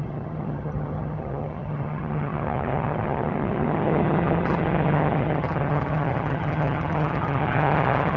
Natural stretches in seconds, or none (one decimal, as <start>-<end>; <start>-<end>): none